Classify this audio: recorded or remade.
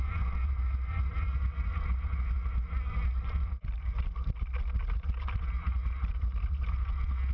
recorded